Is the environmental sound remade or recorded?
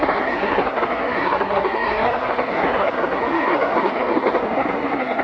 remade